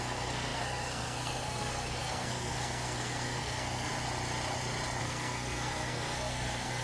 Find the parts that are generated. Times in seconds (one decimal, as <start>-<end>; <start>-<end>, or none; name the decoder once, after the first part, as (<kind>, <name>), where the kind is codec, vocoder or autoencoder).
0.0-3.9 (codec, SNAC); 5.0-6.8